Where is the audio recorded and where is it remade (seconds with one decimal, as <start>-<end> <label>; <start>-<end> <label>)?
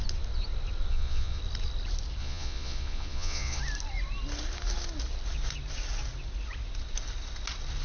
0.0-0.9 recorded; 0.9-1.4 remade; 1.4-2.2 recorded; 2.2-3.6 remade; 3.6-7.8 recorded